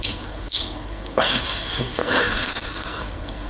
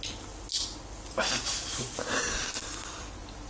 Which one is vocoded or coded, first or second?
first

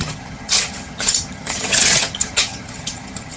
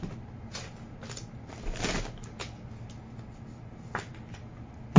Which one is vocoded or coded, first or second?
first